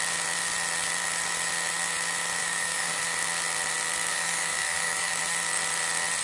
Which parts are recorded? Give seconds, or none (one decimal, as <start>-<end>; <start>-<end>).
0.0-2.4; 3.0-4.1; 5.2-6.2